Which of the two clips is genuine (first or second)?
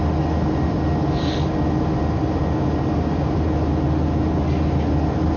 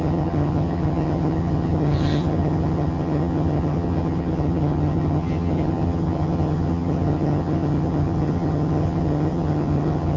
first